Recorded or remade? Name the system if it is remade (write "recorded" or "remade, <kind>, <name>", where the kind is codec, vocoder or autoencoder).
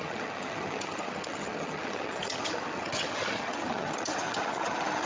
remade, vocoder, HiFi-GAN